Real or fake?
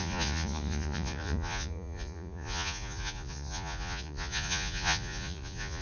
fake